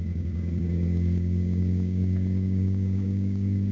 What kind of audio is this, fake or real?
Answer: fake